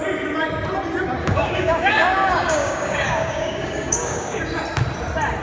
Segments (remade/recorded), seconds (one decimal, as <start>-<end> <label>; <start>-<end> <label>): 0.0-1.2 recorded; 1.2-4.4 remade; 4.4-5.4 recorded